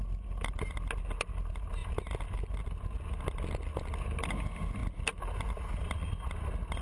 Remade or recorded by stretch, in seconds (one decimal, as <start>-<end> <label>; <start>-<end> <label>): 0.0-6.8 recorded